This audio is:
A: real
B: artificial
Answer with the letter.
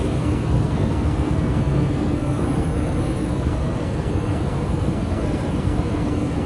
B